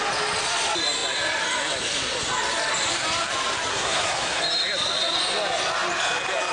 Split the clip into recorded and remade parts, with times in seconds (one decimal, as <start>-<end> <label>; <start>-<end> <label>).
0.0-3.7 recorded; 3.7-4.4 remade; 4.4-6.5 recorded